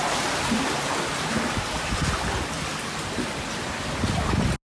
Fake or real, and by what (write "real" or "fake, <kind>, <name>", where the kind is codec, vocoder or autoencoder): real